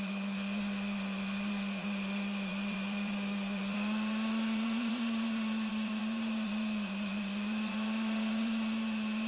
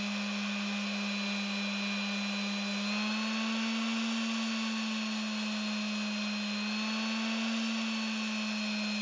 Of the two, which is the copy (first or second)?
first